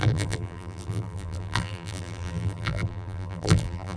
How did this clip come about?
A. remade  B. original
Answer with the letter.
A